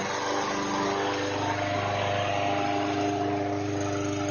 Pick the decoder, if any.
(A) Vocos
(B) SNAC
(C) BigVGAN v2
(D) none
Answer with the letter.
D